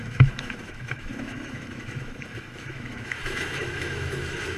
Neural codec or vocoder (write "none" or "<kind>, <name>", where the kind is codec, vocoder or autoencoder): autoencoder, DAC-VAE